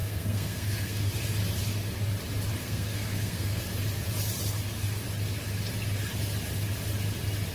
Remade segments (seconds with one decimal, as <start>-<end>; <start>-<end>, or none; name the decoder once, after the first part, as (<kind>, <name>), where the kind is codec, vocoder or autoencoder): 0.0-1.1 (codec, SNAC); 2.6-3.6

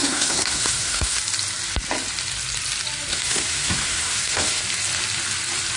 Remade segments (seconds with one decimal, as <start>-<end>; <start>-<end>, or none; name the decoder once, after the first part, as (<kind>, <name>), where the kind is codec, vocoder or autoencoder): 0.0-1.2 (codec, SNAC); 3.1-4.6

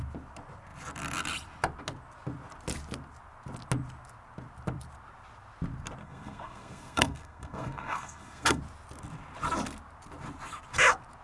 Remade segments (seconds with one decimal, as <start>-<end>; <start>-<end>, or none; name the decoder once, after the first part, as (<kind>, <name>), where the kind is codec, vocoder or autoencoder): 6.0-8.6 (codec, SNAC)

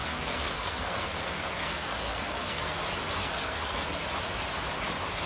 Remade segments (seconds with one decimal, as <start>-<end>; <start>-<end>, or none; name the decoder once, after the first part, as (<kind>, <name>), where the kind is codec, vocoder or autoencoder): 0.0-2.8 (codec, SNAC); 3.2-4.0

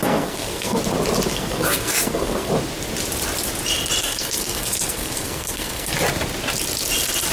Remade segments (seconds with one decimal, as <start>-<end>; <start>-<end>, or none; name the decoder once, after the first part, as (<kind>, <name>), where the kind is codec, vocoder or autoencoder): 0.0-0.8 (codec, SNAC); 1.3-2.5; 4.0-5.9